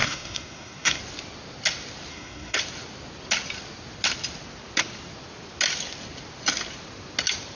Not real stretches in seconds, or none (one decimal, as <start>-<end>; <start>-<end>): 0.0-1.0; 2.1-2.6